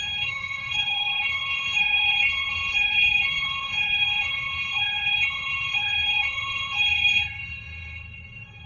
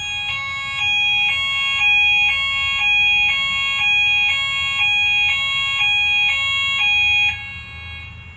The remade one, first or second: first